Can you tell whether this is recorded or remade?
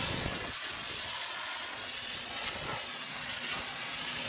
remade